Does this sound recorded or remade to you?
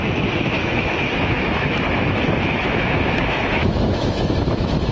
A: remade